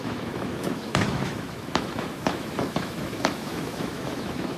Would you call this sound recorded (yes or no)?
no